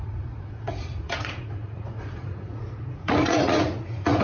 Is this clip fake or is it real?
fake